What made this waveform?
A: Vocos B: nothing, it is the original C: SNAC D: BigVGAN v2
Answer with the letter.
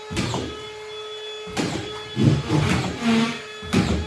B